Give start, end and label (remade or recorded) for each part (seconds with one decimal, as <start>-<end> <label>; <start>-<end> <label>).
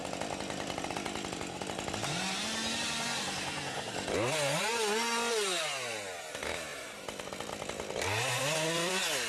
0.0-9.3 recorded